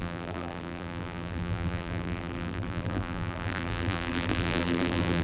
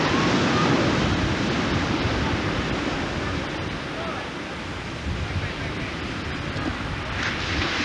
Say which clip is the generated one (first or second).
first